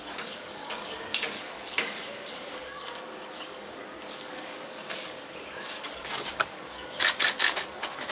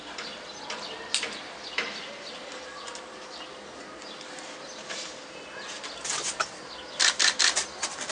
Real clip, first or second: second